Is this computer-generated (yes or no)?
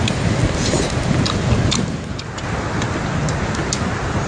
no